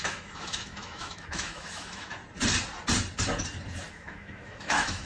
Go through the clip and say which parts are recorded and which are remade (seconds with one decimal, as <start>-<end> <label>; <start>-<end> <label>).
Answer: 0.0-2.2 remade; 2.2-3.9 recorded; 3.9-5.1 remade